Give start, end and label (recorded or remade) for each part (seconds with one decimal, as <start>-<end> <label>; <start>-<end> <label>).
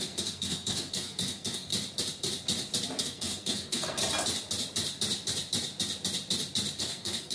0.0-1.7 remade; 1.7-3.0 recorded; 3.0-4.0 remade; 4.0-6.8 recorded; 6.8-7.3 remade